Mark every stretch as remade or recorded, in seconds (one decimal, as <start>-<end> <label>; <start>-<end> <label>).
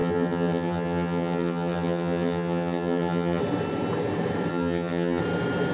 0.0-3.4 remade; 3.4-4.5 recorded; 4.5-5.2 remade; 5.2-5.7 recorded